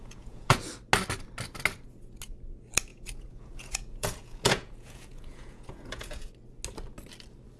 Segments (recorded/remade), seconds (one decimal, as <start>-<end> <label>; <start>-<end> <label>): 0.0-0.6 remade; 0.6-2.9 recorded; 2.9-6.3 remade; 6.3-7.6 recorded